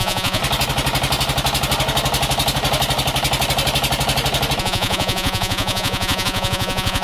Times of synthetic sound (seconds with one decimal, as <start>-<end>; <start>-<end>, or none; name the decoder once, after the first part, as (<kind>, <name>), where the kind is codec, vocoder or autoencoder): 0.0-0.4 (vocoder, Vocos); 4.6-7.0